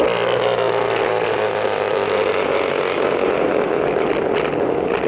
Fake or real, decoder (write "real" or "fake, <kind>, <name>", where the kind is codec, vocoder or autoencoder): real